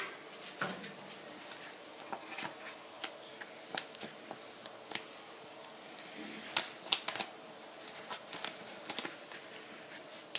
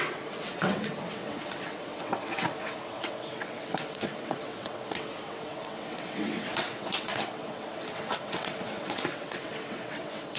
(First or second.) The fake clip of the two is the second